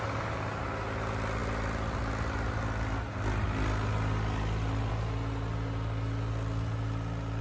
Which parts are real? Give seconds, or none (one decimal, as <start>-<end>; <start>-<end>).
0.0-7.4